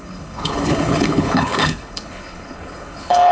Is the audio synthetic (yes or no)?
yes